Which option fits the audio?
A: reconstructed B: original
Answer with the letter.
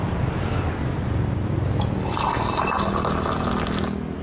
B